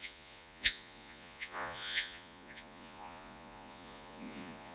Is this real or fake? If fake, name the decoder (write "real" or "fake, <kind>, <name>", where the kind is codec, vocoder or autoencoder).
fake, vocoder, Vocos